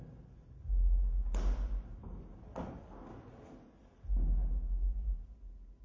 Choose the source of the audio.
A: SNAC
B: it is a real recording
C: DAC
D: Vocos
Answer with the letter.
B